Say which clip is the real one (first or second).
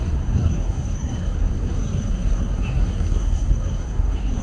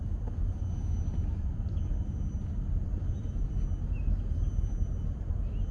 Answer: second